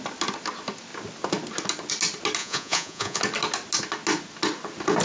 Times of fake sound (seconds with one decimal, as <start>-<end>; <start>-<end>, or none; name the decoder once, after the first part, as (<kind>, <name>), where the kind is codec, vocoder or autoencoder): 2.4-3.2 (vocoder, Vocos)